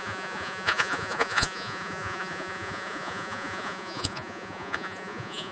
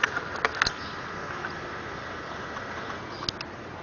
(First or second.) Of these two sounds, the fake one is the first